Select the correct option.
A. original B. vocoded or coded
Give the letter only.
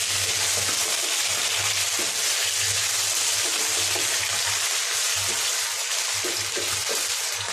A